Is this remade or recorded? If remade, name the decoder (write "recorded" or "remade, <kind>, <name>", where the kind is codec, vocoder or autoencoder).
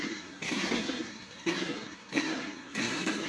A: remade, codec, SNAC